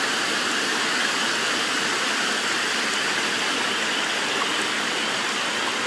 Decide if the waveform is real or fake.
real